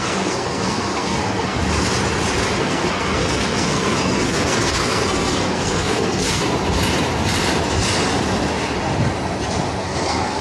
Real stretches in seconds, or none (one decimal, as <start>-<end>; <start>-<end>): 1.6-2.6; 6.4-9.8